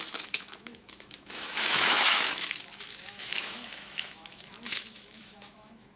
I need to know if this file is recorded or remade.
remade